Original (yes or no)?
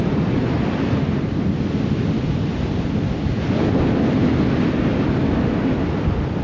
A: yes